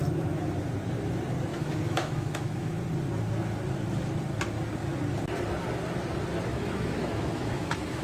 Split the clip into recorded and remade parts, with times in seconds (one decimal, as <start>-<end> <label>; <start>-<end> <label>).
0.0-1.5 recorded; 1.5-2.8 remade; 2.8-6.5 recorded; 6.5-8.0 remade